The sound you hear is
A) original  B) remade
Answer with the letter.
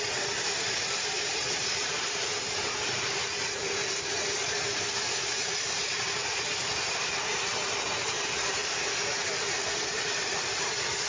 B